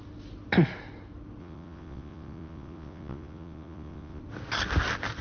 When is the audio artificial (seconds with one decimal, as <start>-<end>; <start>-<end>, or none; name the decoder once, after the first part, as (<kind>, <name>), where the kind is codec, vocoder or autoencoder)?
1.4-4.2 (vocoder, Vocos)